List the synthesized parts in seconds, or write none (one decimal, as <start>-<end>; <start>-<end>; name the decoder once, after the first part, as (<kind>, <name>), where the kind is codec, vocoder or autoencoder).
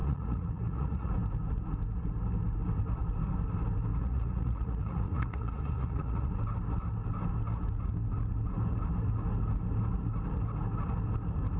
0.0-1.1 (vocoder, Vocos); 3.9-6.3